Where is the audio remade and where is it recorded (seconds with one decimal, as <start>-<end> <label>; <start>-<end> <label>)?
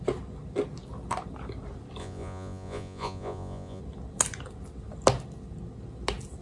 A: 0.0-2.0 recorded; 2.0-3.8 remade; 3.8-6.4 recorded